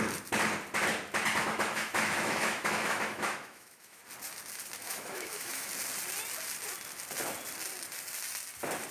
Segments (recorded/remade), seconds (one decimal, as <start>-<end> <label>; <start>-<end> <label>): 0.0-1.4 recorded; 1.4-4.0 remade; 4.0-4.8 recorded; 4.8-5.7 remade; 5.7-8.9 recorded